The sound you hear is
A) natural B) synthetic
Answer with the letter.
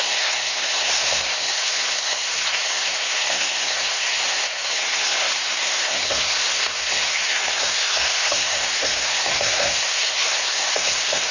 B